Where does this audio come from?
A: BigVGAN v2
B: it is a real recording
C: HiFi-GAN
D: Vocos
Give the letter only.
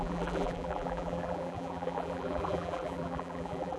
A